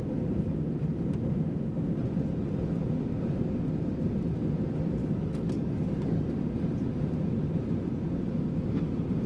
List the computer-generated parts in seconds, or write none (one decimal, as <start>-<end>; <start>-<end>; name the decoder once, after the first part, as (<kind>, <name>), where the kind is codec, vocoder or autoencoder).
5.0-6.2 (codec, DAC)